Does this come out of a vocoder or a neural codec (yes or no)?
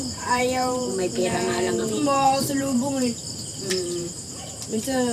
yes